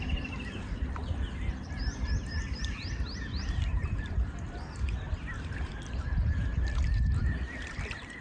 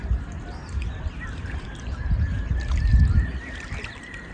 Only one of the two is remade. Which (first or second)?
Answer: first